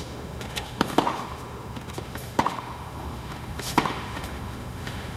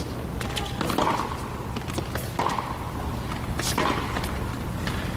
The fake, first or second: first